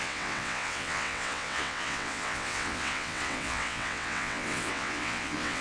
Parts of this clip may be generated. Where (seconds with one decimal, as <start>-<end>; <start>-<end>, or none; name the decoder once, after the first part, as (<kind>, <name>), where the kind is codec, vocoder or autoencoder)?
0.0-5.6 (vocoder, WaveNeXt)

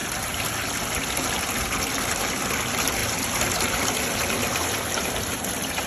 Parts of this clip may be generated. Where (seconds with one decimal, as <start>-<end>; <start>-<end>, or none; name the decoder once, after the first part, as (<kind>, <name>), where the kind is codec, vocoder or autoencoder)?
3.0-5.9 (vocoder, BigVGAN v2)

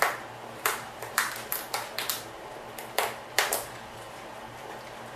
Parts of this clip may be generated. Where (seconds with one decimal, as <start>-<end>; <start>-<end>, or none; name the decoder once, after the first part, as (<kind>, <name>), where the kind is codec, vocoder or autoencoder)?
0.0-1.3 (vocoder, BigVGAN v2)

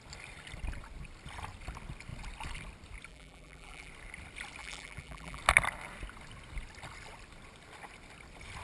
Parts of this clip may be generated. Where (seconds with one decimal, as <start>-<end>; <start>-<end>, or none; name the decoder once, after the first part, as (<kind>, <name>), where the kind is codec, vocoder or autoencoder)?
3.1-3.9 (vocoder, BigVGAN v2); 4.6-5.4

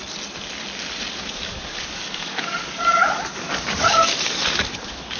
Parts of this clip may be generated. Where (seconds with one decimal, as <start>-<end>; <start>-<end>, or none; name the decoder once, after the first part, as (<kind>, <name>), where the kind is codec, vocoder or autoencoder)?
1.2-5.2 (codec, DAC)

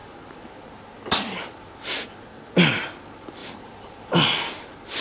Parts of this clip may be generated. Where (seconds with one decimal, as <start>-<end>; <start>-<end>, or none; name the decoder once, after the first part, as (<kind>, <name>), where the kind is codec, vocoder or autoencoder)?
3.4-4.6 (vocoder, BigVGAN v2)

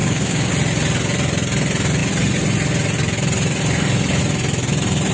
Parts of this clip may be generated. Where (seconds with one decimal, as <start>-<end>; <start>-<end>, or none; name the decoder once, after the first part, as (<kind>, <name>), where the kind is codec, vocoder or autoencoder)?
0.0-0.5 (codec, DAC)

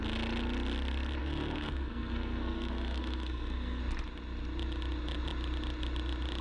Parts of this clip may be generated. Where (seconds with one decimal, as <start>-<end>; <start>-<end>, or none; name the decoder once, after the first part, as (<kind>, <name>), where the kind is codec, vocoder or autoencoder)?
1.2-3.8 (codec, SNAC)